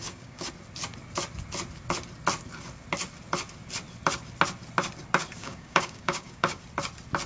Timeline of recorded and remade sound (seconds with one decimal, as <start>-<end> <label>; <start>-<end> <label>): 0.0-0.5 remade; 0.5-5.4 recorded; 5.4-6.6 remade; 6.6-7.3 recorded